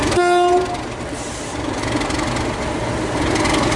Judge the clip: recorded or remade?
recorded